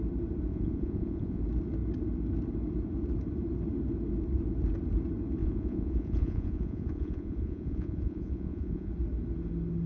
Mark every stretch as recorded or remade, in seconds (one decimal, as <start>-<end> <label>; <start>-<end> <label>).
0.0-0.5 recorded; 0.5-1.4 remade; 1.4-5.4 recorded; 5.4-8.9 remade; 8.9-9.9 recorded